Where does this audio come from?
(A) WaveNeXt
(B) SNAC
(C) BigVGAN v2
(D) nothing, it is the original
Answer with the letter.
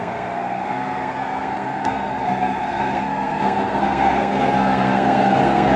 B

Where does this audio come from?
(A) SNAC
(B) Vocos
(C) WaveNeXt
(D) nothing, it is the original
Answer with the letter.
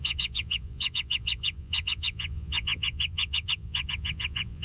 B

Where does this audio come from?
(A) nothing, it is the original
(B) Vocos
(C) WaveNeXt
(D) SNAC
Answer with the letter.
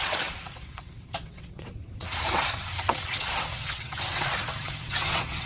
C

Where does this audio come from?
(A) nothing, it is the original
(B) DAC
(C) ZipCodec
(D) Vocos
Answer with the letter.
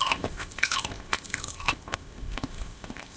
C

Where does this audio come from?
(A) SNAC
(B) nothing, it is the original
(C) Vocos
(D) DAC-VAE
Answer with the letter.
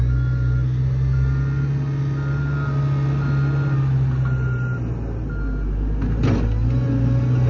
B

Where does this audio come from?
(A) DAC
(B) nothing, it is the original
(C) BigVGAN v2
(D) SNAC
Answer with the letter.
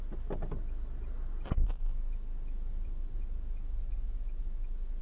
B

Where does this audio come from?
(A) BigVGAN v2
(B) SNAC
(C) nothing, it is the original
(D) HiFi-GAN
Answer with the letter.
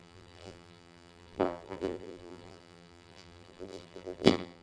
A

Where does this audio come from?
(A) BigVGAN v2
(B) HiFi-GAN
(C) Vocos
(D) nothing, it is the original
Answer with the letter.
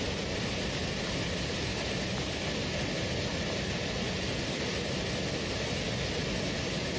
D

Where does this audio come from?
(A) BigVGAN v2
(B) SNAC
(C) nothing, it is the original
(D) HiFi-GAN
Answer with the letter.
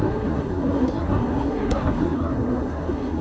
B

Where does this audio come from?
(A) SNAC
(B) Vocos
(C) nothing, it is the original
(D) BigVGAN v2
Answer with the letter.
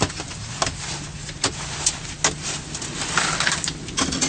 C